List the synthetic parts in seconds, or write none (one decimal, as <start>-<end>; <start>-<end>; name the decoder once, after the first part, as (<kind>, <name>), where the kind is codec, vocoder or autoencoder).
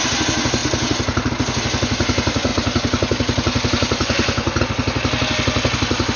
none